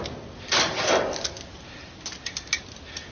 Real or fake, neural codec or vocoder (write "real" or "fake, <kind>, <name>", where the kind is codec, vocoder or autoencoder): real